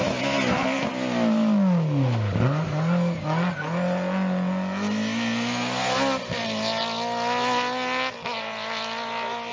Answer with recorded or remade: recorded